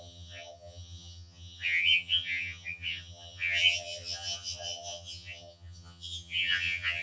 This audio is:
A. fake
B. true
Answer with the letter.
A